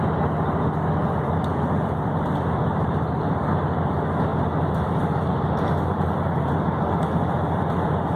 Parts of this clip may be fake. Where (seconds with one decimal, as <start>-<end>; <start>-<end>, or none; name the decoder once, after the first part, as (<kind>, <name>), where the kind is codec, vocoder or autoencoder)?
1.0-3.9 (vocoder, BigVGAN v2); 4.3-6.5